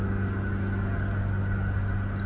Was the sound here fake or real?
real